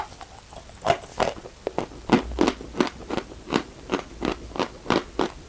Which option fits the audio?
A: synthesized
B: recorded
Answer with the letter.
B